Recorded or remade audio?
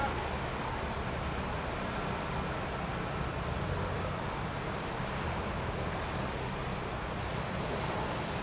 recorded